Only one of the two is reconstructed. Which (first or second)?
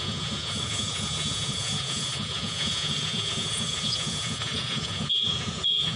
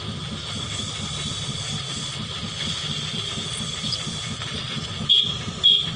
first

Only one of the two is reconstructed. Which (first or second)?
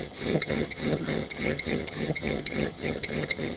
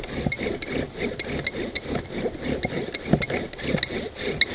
first